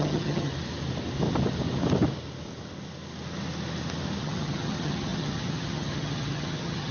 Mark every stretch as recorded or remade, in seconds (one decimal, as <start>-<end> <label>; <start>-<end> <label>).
0.0-0.5 remade; 0.5-4.2 recorded; 4.2-6.9 remade